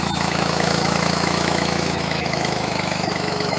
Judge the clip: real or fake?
fake